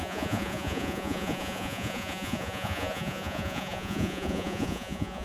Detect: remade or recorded remade